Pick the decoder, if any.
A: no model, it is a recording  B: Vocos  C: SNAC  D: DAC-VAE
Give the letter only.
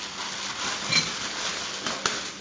A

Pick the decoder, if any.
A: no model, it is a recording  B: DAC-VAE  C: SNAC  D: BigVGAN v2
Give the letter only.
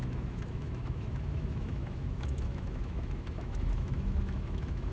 B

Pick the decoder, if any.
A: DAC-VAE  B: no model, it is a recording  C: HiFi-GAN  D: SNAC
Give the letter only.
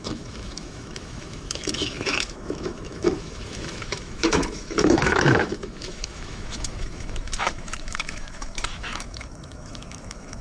A